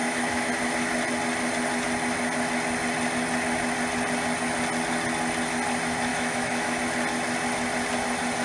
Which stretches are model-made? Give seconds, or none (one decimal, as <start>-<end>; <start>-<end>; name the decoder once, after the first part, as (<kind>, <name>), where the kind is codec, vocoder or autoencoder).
0.0-0.5 (autoencoder, DAC-VAE); 6.1-6.8